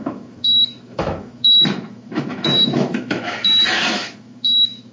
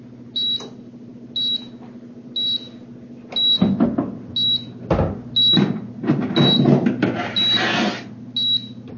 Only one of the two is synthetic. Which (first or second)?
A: first